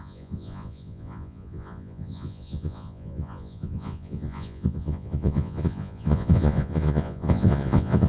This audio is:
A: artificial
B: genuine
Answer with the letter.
A